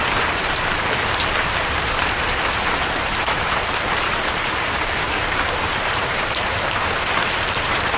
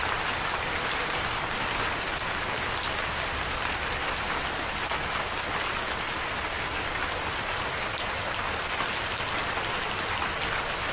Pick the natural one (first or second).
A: second